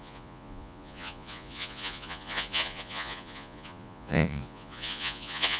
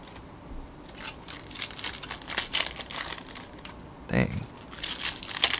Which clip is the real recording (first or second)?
second